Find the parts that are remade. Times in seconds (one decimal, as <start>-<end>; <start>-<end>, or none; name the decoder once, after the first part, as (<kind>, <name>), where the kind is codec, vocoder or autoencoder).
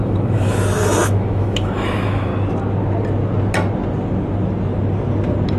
0.0-2.3 (autoencoder, DAC-VAE)